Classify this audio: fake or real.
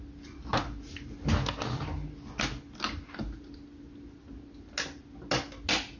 real